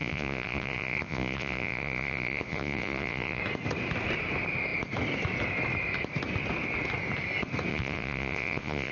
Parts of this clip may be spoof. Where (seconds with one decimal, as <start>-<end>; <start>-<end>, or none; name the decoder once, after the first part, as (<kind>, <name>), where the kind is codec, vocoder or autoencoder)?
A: 0.0-3.4 (vocoder, Vocos); 7.7-8.9